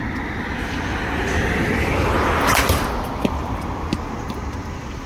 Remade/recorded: recorded